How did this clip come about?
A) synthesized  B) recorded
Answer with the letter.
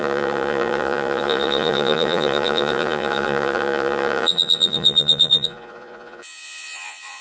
A